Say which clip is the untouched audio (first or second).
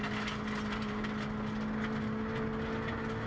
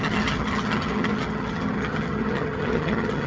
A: first